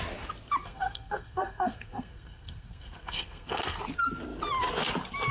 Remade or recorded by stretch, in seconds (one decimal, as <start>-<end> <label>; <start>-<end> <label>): 0.0-0.6 recorded; 0.6-3.8 remade; 3.8-5.3 recorded